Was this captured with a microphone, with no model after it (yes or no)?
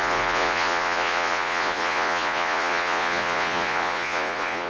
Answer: no